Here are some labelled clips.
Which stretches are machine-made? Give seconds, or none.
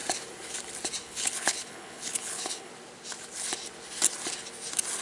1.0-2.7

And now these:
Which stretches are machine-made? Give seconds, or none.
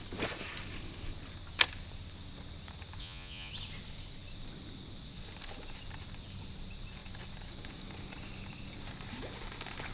3.0-3.5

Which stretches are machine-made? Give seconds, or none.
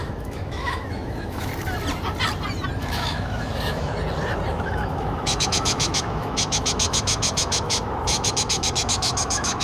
0.0-1.5; 2.8-3.9; 4.5-9.6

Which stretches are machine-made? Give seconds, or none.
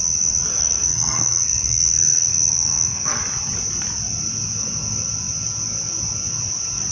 0.5-3.2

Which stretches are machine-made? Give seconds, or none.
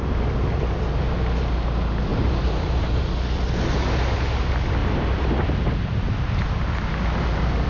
2.1-3.0; 4.8-5.3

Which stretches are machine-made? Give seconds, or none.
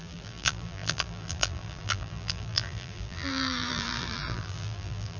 0.0-5.2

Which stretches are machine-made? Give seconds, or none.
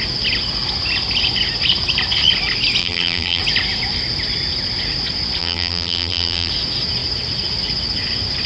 2.8-3.4; 5.4-6.5